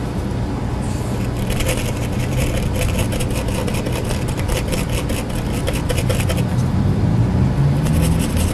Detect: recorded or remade recorded